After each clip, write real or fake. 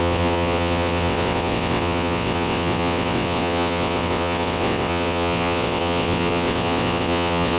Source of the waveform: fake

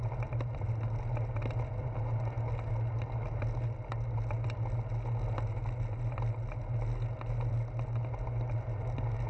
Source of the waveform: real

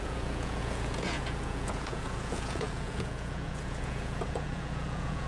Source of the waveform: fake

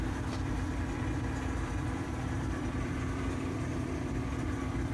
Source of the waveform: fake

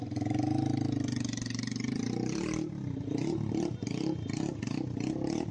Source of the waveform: real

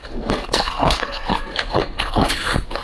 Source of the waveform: fake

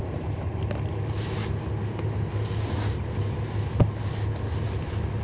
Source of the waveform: real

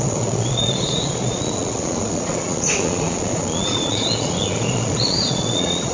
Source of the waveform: fake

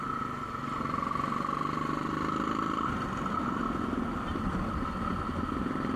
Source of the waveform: real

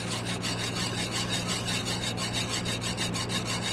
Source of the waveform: real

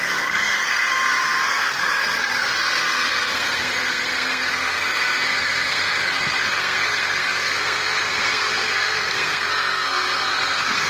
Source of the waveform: fake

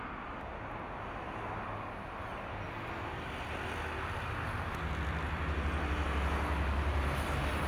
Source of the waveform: real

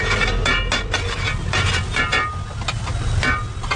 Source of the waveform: real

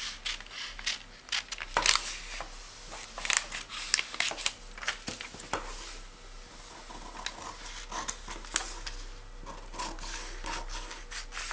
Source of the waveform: real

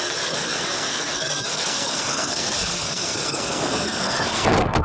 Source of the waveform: fake